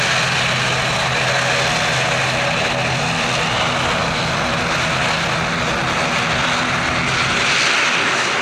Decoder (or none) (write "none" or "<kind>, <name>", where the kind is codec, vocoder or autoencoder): none